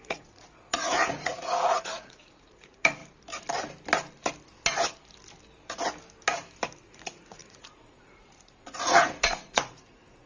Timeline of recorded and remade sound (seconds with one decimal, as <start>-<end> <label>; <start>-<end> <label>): 0.0-3.0 remade; 3.0-6.9 recorded; 6.9-10.3 remade